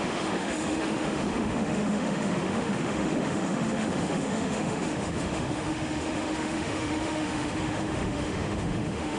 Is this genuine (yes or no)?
no